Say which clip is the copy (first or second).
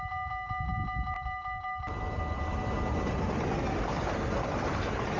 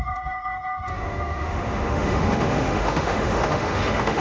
second